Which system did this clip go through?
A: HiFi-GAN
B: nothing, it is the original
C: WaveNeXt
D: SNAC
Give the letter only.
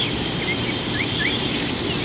B